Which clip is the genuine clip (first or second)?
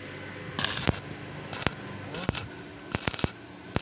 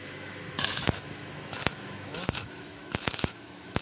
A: first